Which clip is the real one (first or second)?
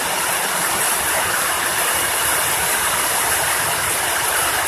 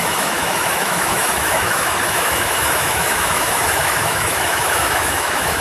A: first